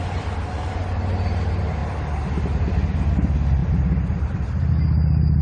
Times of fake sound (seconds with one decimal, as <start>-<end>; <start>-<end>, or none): none